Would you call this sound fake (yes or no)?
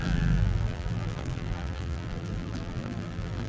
yes